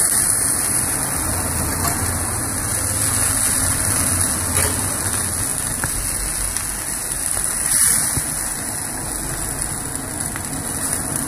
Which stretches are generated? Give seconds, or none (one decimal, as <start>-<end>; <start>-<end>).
none